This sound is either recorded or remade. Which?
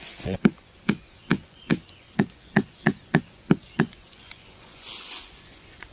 remade